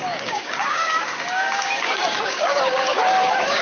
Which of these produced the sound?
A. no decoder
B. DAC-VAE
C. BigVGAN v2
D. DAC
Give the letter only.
D